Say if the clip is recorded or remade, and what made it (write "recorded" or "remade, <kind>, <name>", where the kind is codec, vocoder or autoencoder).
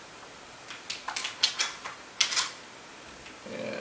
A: recorded